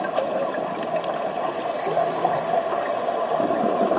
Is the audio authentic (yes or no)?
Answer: yes